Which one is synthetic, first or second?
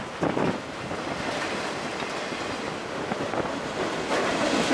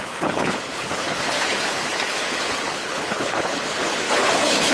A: second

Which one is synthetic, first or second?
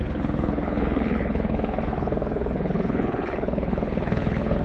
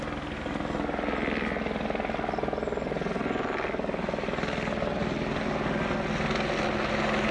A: first